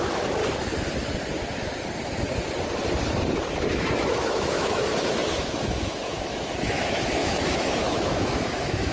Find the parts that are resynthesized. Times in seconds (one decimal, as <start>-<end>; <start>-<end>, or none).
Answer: 0.0-0.4; 3.7-8.9